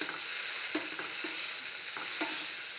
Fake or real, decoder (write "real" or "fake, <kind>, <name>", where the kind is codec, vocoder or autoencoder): real